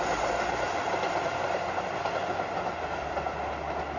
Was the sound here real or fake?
real